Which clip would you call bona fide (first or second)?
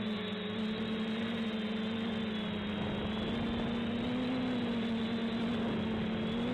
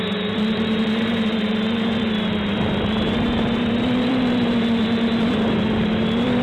first